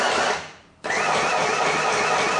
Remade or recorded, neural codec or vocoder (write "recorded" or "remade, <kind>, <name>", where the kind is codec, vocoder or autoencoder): recorded